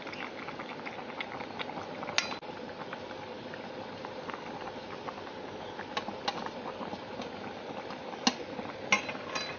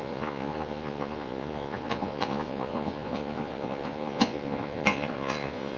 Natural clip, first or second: first